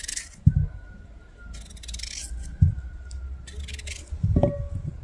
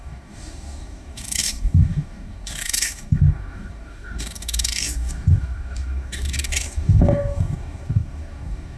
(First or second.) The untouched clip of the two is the first